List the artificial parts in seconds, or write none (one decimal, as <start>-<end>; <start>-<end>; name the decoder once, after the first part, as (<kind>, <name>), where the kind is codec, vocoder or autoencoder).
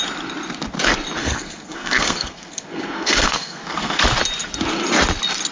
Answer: 1.2-4.0 (codec, SNAC)